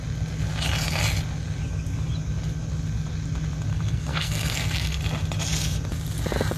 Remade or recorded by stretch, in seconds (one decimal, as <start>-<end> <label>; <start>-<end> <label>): 0.0-3.7 recorded; 3.7-5.0 remade; 5.0-6.6 recorded